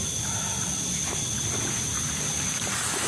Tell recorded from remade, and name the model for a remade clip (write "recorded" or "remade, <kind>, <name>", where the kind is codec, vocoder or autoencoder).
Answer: recorded